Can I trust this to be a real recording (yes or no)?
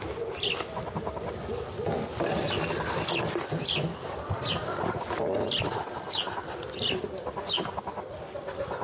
yes